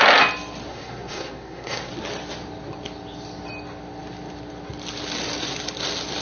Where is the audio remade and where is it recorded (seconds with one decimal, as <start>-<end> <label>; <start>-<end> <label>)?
0.0-0.7 recorded; 0.7-1.9 remade; 1.9-6.2 recorded